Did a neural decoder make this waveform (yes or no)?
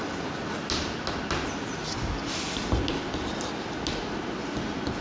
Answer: no